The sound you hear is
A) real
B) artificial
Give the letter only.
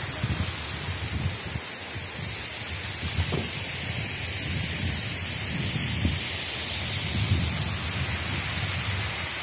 A